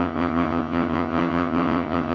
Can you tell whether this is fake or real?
fake